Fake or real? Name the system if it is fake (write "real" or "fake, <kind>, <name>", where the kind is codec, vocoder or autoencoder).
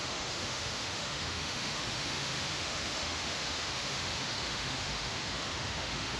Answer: fake, autoencoder, DAC-VAE